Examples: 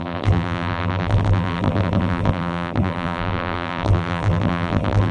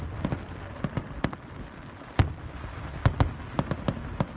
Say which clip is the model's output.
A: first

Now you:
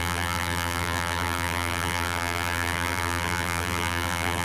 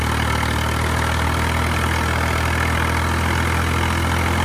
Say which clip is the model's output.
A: first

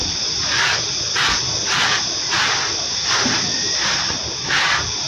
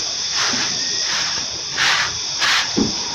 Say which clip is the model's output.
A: second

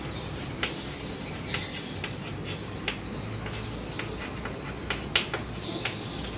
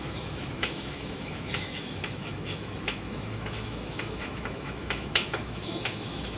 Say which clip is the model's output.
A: second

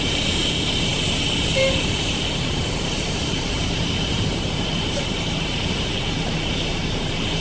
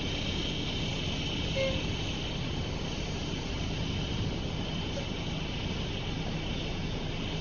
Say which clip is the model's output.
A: first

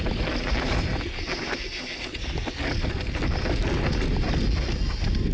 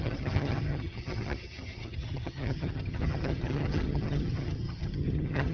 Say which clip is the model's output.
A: second